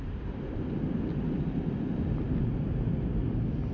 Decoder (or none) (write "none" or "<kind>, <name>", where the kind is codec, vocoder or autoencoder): none